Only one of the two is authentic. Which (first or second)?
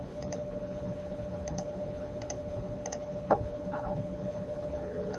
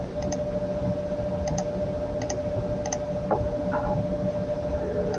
second